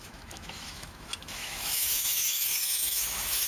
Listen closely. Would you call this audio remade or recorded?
remade